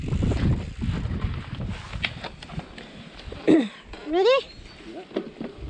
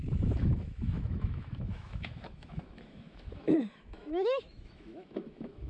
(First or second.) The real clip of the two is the first